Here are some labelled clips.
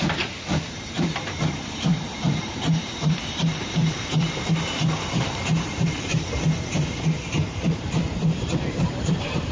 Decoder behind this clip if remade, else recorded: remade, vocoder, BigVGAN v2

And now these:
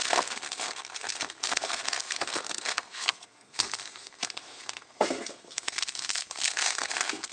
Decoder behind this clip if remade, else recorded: remade, codec, SNAC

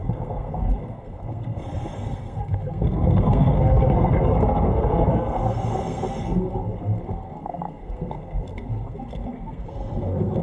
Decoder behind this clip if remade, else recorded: remade, codec, SNAC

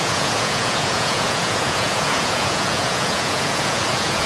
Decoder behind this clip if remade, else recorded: remade, vocoder, Vocos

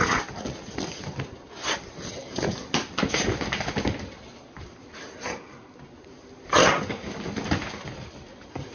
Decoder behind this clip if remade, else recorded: recorded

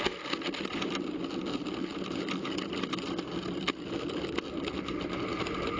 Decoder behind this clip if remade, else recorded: recorded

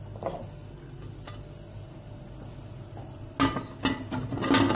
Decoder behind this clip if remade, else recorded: recorded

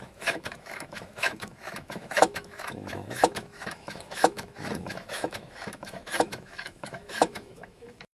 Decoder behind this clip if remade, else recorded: remade, autoencoder, DAC-VAE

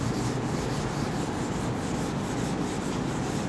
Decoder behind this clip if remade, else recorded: recorded